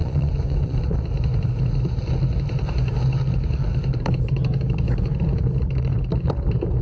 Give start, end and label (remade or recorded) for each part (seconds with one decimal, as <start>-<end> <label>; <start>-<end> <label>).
0.0-0.8 remade; 0.8-6.8 recorded